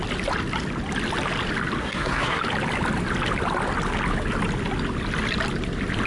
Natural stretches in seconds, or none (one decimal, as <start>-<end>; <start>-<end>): 0.0-1.8; 2.4-6.1